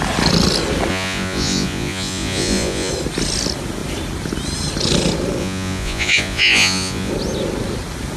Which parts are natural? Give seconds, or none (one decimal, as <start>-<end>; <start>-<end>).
0.0-0.9; 2.9-5.4; 7.1-8.2